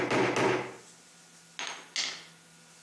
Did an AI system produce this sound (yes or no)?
no